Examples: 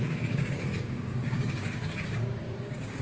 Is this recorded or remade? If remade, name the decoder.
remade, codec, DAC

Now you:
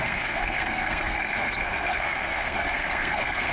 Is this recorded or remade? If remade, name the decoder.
remade, codec, SNAC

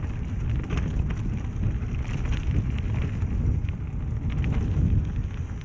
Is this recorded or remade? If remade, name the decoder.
recorded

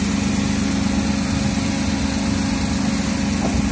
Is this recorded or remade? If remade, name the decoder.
recorded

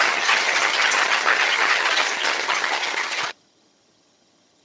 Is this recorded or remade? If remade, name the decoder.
remade, vocoder, HiFi-GAN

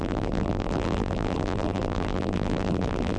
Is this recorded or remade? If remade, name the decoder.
remade, vocoder, BigVGAN v2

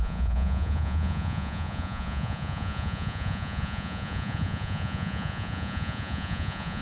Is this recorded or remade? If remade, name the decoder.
remade, vocoder, Vocos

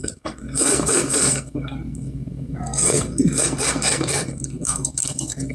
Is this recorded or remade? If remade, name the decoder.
remade, codec, SNAC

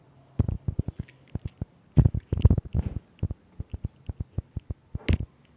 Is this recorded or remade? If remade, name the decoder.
recorded